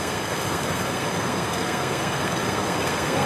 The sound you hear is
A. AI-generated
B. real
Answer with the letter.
A